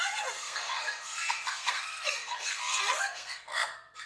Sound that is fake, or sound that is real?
fake